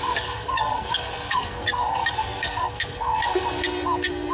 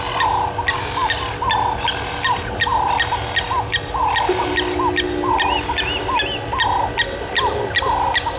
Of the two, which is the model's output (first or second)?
first